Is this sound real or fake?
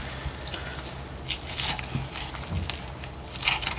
real